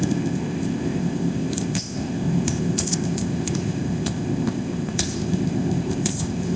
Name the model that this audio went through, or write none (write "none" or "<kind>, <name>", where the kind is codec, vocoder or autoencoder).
codec, ZipCodec